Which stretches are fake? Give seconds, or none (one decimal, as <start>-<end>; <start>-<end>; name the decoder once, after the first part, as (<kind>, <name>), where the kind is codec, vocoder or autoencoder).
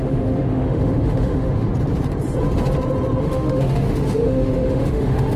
0.0-1.7 (autoencoder, DAC-VAE); 3.2-5.4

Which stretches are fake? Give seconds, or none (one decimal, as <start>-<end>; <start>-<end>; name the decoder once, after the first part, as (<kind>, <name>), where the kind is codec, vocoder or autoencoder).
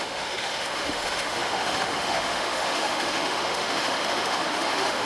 0.0-5.1 (autoencoder, DAC-VAE)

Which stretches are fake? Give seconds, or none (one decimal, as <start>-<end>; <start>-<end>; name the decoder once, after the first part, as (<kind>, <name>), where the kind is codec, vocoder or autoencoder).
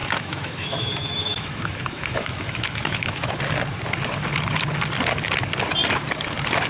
0.0-3.4 (autoencoder, DAC-VAE)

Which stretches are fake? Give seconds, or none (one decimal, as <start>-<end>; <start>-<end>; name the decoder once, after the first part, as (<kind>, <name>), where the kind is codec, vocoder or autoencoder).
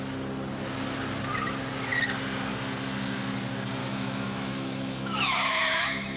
3.8-6.2 (autoencoder, DAC-VAE)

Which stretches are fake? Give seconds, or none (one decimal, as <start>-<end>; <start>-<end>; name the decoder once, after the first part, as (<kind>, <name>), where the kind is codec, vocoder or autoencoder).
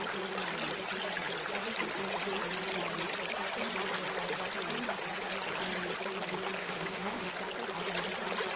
6.6-7.3 (autoencoder, DAC-VAE)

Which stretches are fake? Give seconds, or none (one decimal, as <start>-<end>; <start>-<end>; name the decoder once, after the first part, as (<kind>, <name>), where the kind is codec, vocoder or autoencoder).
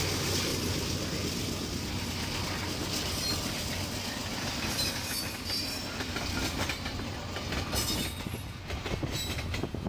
none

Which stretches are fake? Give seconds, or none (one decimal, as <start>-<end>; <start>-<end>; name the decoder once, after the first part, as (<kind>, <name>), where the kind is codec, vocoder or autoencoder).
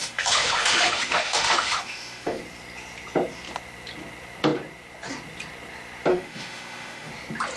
0.0-2.4 (autoencoder, DAC-VAE); 6.1-7.1